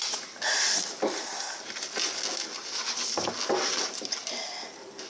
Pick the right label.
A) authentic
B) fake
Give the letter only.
A